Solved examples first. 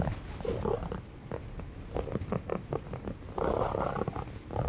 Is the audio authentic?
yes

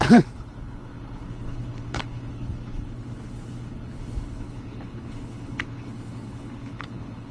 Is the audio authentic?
no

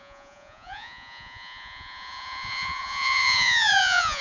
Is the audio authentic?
no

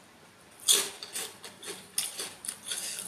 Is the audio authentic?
yes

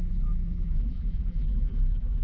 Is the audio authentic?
no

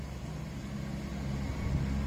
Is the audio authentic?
yes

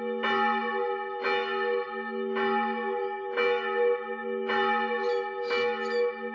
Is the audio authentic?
yes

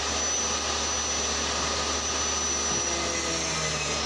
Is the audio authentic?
yes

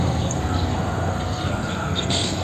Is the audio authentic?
no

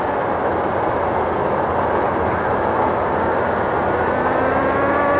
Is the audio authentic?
yes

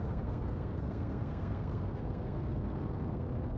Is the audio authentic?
no